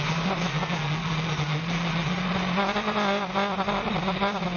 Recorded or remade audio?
recorded